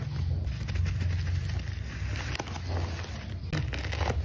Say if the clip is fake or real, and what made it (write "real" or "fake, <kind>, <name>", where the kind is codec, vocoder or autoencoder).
real